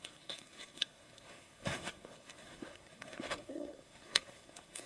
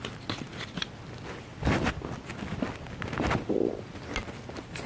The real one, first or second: second